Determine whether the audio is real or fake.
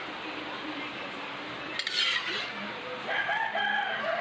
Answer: real